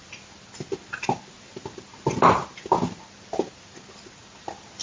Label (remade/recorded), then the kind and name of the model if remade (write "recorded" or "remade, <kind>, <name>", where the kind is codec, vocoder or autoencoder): recorded